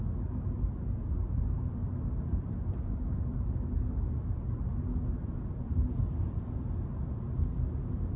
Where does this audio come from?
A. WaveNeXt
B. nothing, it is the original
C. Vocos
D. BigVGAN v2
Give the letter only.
B